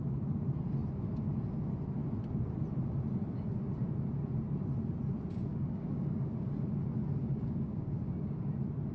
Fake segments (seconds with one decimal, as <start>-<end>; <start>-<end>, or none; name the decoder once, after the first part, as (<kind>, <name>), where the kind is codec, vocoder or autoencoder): 5.5-6.5 (codec, DAC); 7.2-8.5